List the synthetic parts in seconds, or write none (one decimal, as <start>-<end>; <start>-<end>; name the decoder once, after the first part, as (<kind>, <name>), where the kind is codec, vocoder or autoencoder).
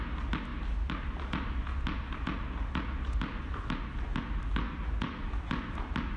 none